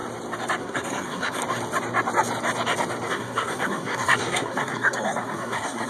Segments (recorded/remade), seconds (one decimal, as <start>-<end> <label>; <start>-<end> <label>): 0.0-0.6 recorded; 0.6-1.4 remade; 1.4-3.1 recorded; 3.1-5.9 remade